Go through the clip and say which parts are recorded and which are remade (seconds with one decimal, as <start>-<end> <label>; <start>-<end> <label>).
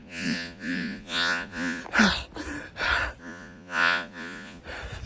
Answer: 0.0-1.8 remade; 1.8-3.2 recorded; 3.2-4.6 remade; 4.6-5.1 recorded